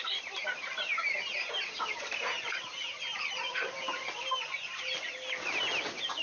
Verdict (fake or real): real